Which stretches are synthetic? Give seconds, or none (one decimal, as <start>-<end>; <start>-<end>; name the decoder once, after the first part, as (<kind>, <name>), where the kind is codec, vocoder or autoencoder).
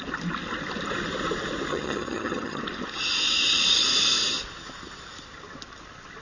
1.7-2.6 (vocoder, HiFi-GAN)